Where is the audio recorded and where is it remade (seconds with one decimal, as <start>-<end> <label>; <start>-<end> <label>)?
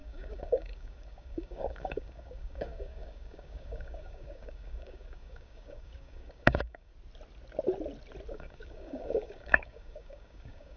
0.0-6.9 remade; 6.9-8.3 recorded; 8.3-10.8 remade